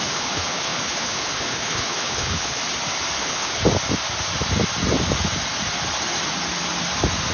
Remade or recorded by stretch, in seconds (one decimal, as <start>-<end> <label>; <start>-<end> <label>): 0.0-2.6 remade; 2.6-3.2 recorded; 3.2-3.6 remade; 3.6-7.3 recorded